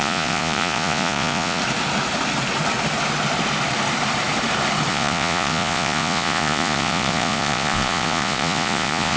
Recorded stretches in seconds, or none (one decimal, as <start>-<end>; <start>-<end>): 1.6-4.9